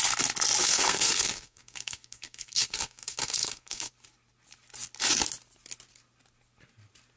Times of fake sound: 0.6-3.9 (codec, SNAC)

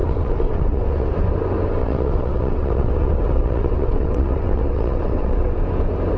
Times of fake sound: 0.0-1.1 (vocoder, WaveNeXt); 1.8-5.5

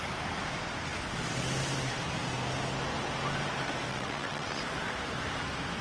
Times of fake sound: 3.9-4.6 (vocoder, WaveNeXt)

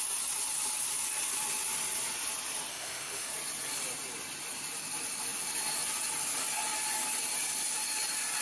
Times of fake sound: 2.7-3.3 (autoencoder, DAC-VAE)

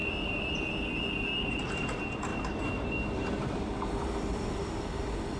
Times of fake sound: 0.0-2.3 (vocoder, BigVGAN v2); 4.1-5.4

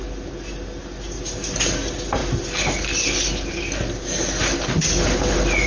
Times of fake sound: none

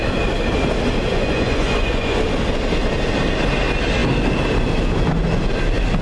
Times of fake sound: 1.1-2.2 (vocoder, Vocos)